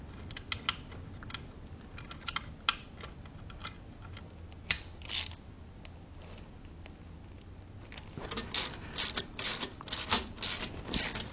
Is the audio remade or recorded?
recorded